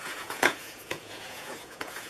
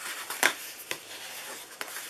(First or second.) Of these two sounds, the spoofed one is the first